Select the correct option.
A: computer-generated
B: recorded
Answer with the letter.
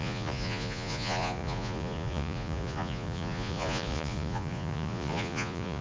A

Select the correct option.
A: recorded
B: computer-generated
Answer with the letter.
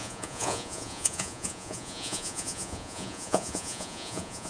B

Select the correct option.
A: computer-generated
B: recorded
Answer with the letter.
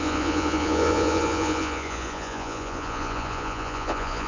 A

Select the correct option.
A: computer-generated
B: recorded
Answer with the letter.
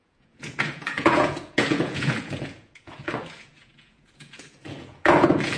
A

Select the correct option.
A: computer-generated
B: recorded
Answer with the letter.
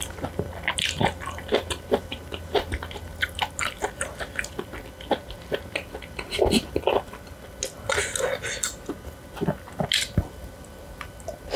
B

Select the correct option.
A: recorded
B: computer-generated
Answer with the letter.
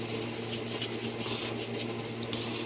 A